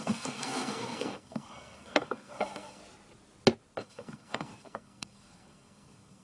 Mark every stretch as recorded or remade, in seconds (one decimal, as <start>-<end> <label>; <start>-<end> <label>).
0.0-2.8 remade; 2.8-3.8 recorded; 3.8-6.2 remade